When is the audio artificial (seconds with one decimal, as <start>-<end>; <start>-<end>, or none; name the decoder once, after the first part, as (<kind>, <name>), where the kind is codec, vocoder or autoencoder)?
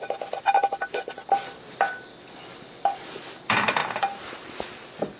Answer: 2.5-3.2 (vocoder, BigVGAN v2)